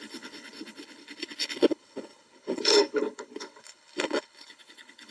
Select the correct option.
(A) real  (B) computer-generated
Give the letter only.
B